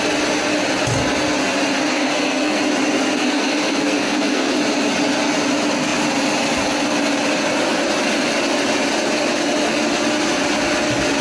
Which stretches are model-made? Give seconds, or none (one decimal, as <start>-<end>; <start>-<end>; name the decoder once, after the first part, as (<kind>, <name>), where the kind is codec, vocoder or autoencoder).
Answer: 1.9-2.6 (codec, SNAC); 3.2-4.5